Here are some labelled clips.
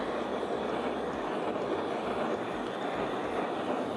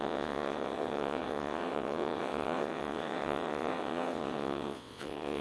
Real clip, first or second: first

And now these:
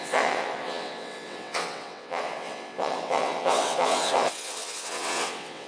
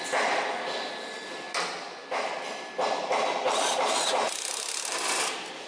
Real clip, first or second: second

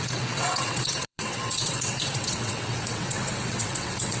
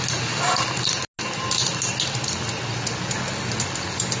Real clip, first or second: second